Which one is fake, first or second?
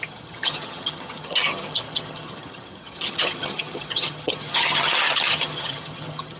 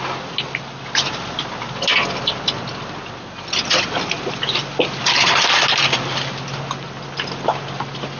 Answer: first